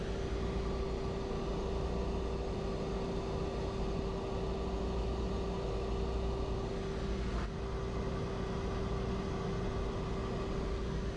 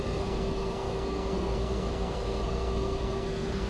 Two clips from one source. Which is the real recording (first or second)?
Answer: first